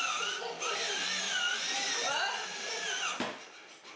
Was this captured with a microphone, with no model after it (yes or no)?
yes